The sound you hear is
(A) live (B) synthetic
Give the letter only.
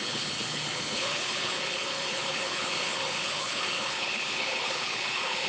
B